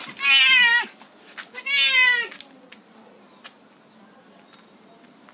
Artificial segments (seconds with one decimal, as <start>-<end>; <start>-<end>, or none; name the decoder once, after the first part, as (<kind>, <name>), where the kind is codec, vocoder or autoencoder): none